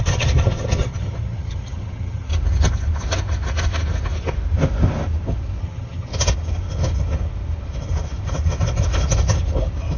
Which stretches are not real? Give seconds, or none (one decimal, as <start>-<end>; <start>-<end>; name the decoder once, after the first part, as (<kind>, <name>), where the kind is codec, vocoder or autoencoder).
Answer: 0.0-2.3 (vocoder, HiFi-GAN); 5.6-6.1